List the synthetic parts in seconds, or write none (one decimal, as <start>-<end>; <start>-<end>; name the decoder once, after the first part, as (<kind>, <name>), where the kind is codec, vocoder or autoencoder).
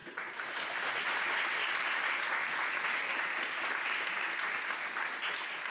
none